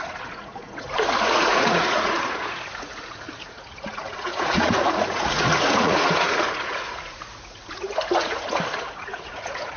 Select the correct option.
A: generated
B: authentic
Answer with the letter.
A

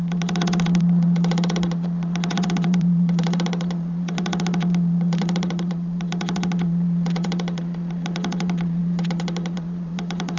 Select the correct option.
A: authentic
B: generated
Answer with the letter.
B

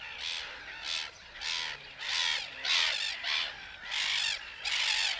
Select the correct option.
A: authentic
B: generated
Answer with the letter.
A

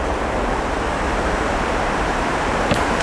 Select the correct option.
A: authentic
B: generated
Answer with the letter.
B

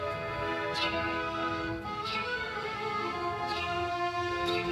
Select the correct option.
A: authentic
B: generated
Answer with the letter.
B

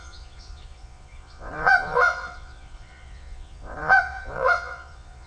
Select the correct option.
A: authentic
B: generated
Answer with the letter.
B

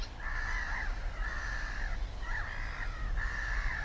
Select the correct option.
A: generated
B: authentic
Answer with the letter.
B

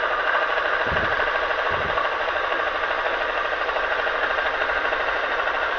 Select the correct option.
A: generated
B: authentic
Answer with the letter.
B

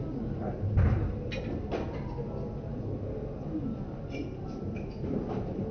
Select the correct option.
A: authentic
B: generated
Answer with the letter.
A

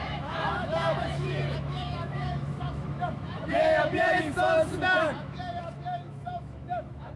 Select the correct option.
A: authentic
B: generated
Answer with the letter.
B